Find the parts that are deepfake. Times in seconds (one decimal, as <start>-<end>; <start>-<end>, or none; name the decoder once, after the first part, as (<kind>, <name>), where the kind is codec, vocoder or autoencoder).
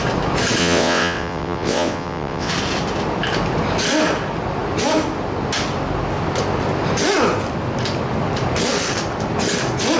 0.6-2.5 (vocoder, WaveNeXt)